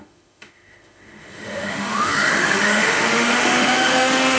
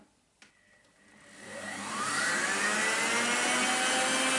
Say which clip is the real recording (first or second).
second